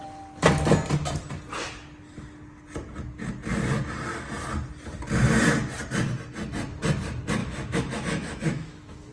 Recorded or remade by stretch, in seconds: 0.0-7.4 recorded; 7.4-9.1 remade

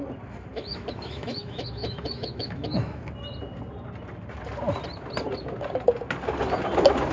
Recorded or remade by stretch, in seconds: 0.0-0.5 recorded; 0.5-3.0 remade; 3.0-7.1 recorded

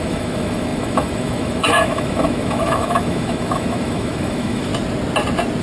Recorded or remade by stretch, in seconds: 0.0-4.7 remade; 4.7-5.6 recorded

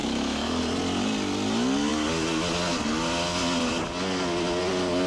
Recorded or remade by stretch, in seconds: 0.0-0.6 remade; 0.6-5.1 recorded

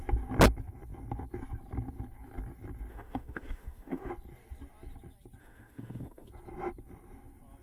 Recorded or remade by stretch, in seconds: 0.0-2.9 recorded; 2.9-4.1 remade; 4.1-5.4 recorded; 5.4-6.3 remade; 6.3-7.6 recorded